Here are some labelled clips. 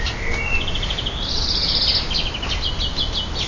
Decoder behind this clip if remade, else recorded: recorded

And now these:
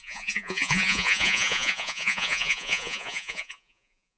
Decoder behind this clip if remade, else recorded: remade, vocoder, Vocos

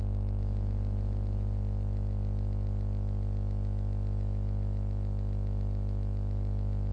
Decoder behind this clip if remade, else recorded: recorded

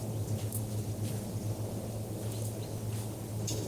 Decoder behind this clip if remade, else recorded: recorded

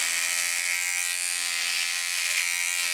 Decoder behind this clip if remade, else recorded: recorded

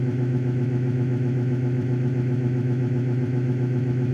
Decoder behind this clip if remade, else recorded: remade, autoencoder, DAC-VAE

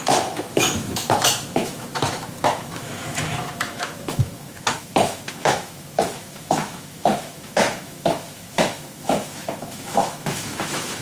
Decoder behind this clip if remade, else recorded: remade, autoencoder, DAC-VAE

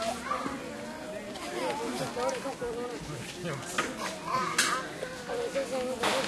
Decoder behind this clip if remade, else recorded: recorded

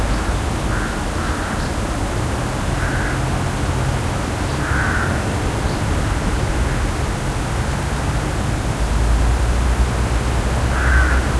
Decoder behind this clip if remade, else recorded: recorded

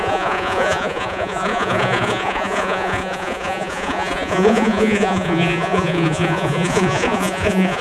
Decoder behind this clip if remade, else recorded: remade, vocoder, Vocos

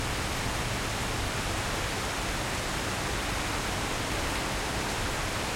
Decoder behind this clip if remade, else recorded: recorded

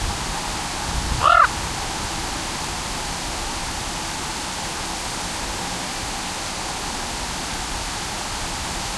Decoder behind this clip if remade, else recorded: recorded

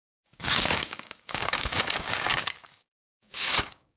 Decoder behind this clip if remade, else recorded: remade, codec, DAC